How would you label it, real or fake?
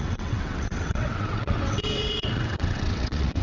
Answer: fake